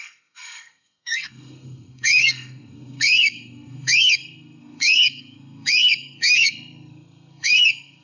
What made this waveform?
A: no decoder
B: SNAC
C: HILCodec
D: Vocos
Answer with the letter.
B